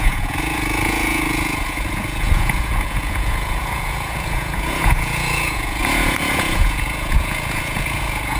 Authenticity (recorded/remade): remade